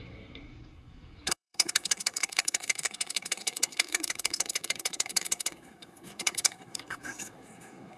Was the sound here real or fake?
fake